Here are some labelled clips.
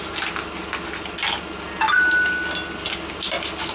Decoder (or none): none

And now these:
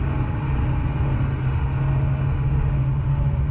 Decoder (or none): none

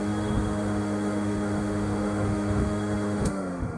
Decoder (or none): autoencoder, DAC-VAE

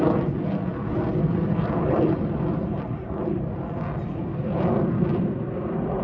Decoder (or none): none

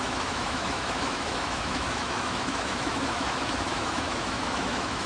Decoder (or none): autoencoder, DAC-VAE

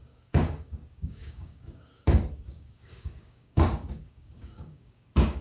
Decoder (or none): codec, DAC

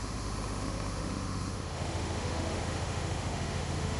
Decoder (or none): autoencoder, DAC-VAE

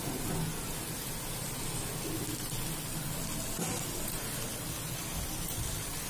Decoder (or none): none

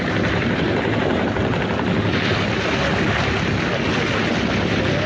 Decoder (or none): none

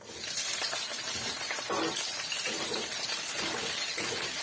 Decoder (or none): vocoder, BigVGAN v2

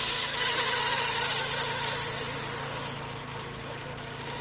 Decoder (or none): none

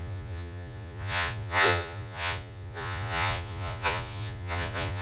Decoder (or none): vocoder, Vocos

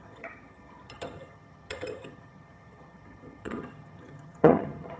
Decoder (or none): vocoder, HiFi-GAN